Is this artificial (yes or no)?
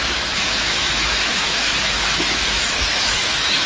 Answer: yes